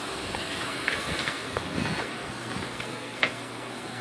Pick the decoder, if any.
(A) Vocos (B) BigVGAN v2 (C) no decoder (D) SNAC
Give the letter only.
D